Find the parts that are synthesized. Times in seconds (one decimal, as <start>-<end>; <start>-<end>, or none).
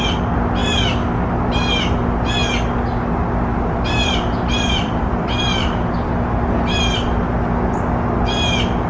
3.5-5.9